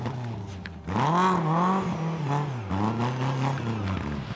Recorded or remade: recorded